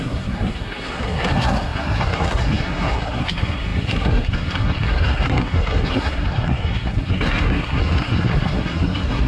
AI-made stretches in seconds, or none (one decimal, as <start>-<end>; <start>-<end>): 0.0-9.3